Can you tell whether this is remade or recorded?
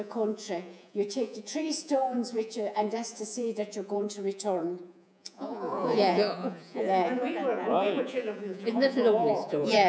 remade